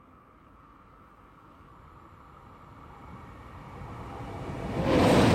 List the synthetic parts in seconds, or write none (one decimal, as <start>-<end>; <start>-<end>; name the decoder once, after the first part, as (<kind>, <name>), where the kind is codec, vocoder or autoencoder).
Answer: 0.0-1.7 (codec, DAC)